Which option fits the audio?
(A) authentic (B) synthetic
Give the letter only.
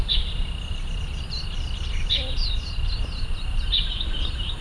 A